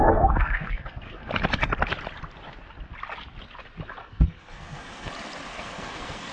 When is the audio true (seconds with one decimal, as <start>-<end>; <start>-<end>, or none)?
1.3-4.0; 5.1-5.5